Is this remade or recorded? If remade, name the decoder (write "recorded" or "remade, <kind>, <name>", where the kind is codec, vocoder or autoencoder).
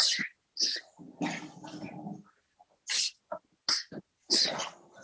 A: recorded